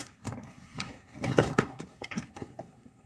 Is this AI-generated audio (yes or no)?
yes